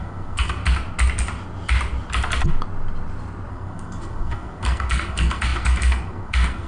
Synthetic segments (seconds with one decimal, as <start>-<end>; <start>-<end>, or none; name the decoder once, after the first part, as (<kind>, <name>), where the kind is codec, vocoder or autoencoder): 0.0-0.6 (codec, SNAC); 3.5-6.7